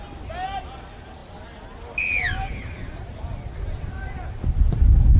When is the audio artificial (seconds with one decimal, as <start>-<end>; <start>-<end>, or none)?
none